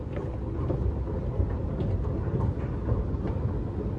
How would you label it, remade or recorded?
recorded